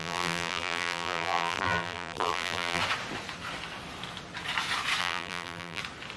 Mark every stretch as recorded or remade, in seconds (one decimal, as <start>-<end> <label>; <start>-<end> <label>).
0.0-2.8 remade; 2.8-5.0 recorded; 5.0-5.8 remade; 5.8-6.2 recorded